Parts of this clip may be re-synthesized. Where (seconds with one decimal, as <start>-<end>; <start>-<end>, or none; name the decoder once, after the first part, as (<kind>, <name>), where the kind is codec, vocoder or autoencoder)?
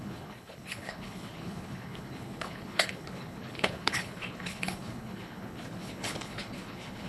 0.0-7.1 (codec, HILCodec)